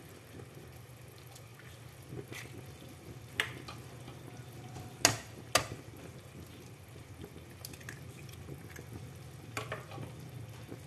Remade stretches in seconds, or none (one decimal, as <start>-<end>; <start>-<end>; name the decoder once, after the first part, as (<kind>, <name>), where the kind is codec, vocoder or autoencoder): none